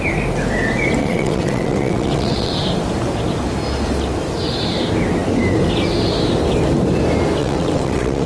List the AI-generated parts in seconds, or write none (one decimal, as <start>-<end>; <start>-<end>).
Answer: 1.0-2.5; 7.4-8.3